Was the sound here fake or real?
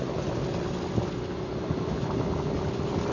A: real